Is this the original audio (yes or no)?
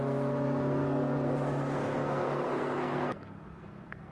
no